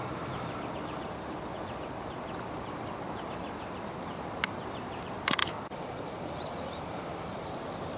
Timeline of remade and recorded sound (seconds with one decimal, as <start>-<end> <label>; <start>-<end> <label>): 0.0-1.5 remade; 1.5-4.7 recorded; 4.7-5.4 remade; 5.4-6.5 recorded; 6.5-8.0 remade